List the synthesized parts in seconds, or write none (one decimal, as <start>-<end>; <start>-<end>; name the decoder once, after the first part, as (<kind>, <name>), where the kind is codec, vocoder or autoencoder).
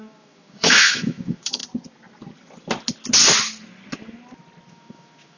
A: 0.0-1.6 (autoencoder, DAC-VAE); 4.7-5.4